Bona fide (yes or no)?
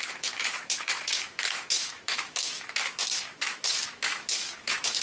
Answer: no